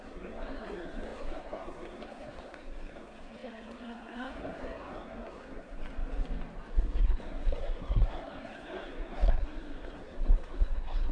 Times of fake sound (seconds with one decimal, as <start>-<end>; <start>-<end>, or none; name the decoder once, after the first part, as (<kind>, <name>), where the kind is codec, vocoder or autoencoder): 0.0-5.8 (codec, SNAC); 6.7-11.1